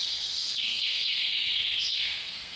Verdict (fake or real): fake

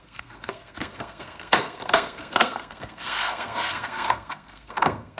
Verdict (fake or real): fake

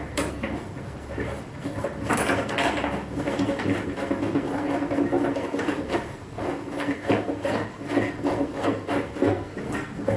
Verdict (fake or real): fake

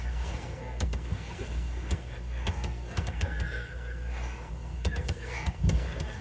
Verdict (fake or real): fake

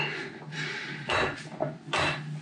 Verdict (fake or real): real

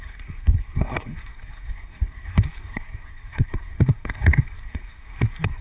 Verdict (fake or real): fake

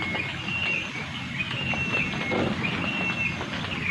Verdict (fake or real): real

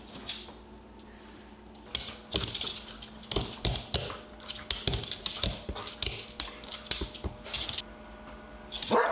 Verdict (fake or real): real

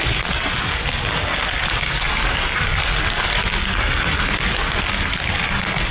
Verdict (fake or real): real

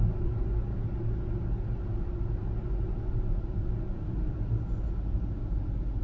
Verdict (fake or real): real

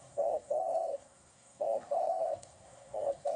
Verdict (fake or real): fake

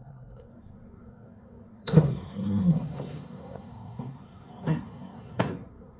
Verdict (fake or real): fake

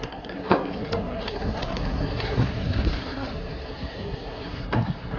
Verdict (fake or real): fake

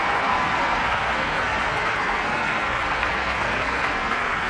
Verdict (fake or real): fake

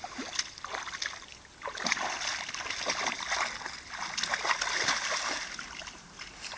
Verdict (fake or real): real